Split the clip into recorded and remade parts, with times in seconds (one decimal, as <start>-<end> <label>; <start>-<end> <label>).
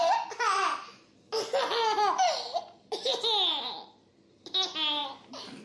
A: 0.0-5.6 recorded